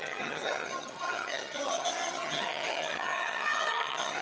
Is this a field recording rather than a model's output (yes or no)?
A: no